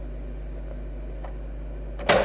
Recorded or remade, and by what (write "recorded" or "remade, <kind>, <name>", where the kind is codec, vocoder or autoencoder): recorded